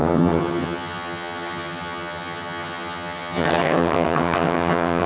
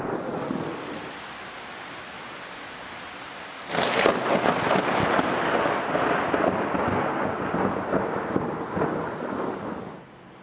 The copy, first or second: first